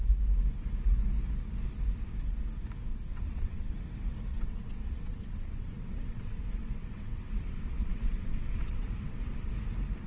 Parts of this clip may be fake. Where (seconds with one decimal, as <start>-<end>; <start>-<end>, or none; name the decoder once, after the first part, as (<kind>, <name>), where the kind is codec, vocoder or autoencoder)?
2.9-3.7 (vocoder, WaveNeXt); 4.3-9.5